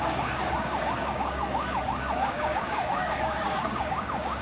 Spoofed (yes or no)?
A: yes